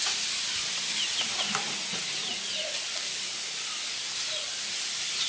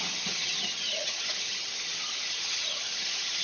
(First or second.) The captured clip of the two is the first